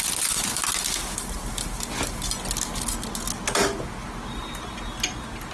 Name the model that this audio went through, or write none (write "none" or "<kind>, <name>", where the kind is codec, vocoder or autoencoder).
none